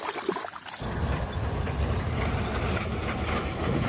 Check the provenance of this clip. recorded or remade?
recorded